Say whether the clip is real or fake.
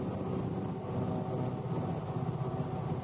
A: real